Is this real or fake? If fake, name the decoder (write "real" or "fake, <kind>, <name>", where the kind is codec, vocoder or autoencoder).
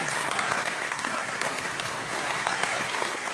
fake, codec, SNAC